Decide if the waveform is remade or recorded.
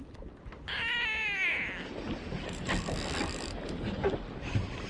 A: recorded